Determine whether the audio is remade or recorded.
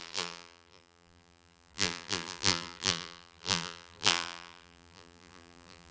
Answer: remade